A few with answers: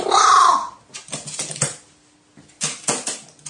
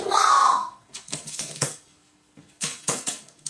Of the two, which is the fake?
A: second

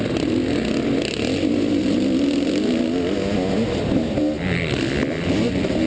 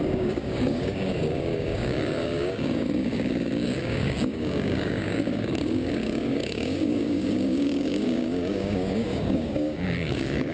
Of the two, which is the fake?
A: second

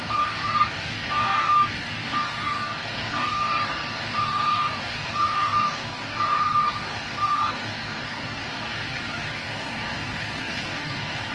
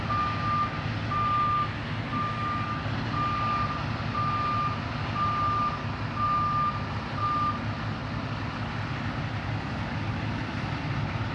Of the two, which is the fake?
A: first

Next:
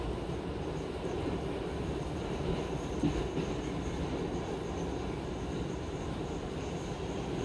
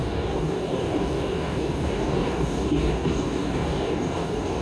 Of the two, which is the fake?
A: second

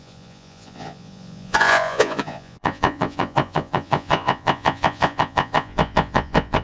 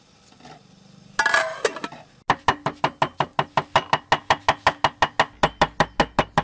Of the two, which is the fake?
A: first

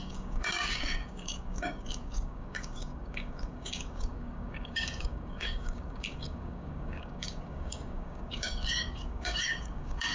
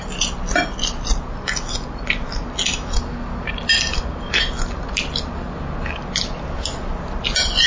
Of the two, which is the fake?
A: first